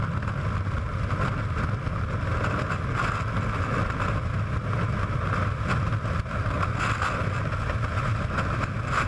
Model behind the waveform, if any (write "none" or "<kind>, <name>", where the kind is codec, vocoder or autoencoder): none